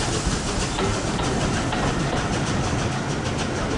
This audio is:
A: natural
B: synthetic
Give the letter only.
A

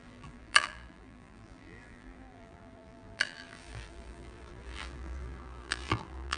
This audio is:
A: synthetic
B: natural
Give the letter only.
A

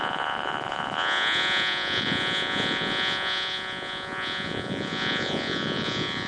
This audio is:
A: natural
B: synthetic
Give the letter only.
B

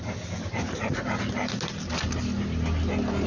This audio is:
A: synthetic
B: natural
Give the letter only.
B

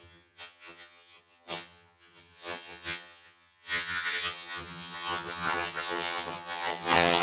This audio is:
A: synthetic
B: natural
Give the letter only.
A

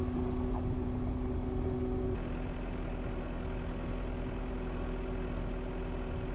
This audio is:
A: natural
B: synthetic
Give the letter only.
A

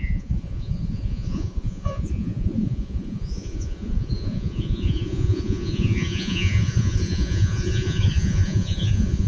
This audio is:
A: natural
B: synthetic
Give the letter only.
B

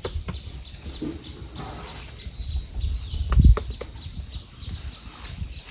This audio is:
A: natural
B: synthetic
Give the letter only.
A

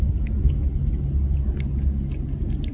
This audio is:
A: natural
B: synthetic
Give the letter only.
A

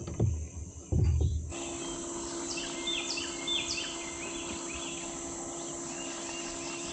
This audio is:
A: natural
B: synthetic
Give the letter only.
A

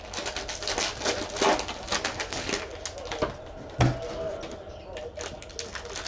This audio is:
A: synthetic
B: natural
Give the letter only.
B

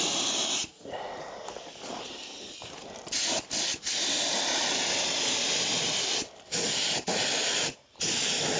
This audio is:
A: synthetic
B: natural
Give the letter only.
B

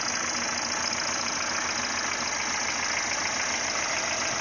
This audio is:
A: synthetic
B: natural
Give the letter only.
B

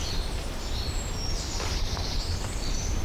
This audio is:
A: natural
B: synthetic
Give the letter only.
B